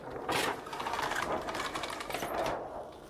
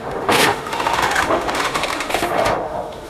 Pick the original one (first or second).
first